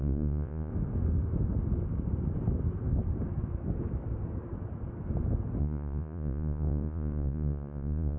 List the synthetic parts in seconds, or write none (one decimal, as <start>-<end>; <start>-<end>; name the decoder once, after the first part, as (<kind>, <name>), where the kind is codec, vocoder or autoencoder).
0.0-0.7 (vocoder, Vocos); 5.6-8.2